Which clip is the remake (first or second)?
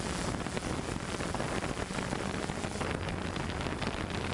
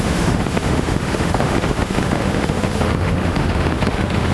second